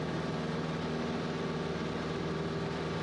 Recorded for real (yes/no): yes